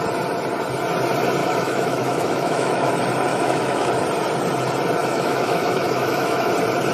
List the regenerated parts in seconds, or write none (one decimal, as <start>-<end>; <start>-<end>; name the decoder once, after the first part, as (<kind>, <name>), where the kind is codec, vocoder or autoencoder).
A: 1.4-2.9 (autoencoder, DAC-VAE); 3.3-3.9; 5.0-6.5